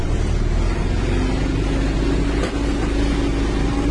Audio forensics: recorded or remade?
recorded